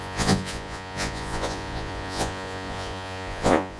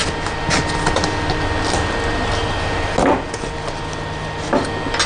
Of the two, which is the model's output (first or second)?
first